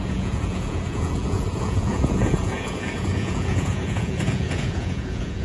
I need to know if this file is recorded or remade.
remade